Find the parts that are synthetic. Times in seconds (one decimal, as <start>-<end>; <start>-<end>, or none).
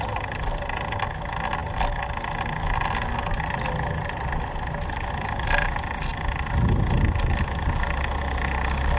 none